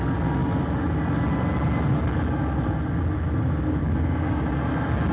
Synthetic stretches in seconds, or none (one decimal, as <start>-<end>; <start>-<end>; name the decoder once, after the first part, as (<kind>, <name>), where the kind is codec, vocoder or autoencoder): 3.8-4.5 (codec, DAC)